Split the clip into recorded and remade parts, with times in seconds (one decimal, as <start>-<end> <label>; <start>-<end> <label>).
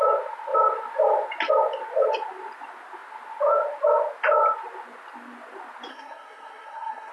0.0-5.9 recorded; 5.9-7.1 remade